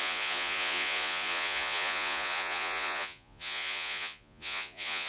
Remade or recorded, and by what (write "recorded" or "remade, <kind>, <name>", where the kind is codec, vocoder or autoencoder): remade, vocoder, Vocos